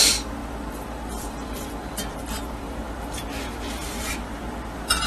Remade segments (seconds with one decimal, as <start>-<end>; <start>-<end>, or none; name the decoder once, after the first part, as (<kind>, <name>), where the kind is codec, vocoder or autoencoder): none